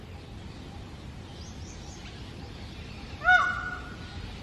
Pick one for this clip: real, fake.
real